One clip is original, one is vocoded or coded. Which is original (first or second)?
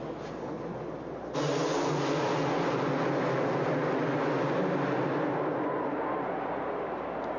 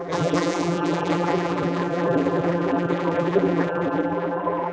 first